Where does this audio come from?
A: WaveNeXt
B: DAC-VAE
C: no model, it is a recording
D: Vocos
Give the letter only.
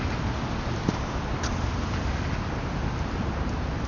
C